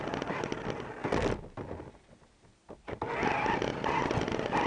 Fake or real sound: real